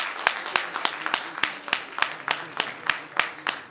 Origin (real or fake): real